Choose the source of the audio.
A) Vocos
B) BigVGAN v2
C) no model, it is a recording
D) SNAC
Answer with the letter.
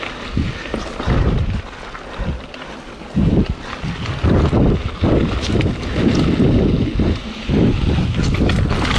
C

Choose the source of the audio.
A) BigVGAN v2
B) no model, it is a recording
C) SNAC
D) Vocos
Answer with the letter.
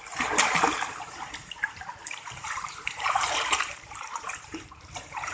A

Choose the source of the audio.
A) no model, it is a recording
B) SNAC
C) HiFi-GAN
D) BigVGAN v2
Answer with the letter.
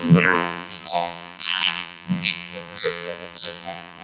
D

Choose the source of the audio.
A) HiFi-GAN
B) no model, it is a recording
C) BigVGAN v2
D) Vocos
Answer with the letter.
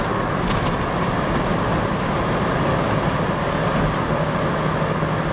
B